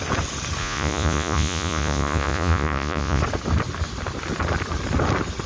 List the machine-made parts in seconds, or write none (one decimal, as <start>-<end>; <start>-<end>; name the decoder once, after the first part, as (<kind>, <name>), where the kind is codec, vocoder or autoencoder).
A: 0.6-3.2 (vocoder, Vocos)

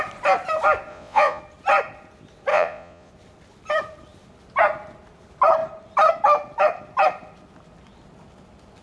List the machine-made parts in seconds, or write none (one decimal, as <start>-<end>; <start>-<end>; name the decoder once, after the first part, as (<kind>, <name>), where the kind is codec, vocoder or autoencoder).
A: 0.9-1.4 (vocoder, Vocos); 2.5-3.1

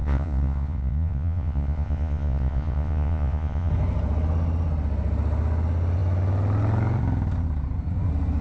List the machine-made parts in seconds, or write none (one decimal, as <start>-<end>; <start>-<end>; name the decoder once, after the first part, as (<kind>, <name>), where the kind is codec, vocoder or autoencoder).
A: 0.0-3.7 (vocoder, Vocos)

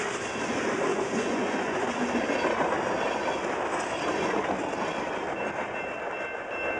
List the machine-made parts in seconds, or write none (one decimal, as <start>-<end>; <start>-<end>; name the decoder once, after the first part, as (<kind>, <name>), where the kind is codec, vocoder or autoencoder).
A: 0.9-1.9 (vocoder, Vocos)

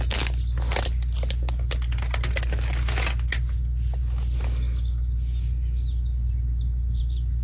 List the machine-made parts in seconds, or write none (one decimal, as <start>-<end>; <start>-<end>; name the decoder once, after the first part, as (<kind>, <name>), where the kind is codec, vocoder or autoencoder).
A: none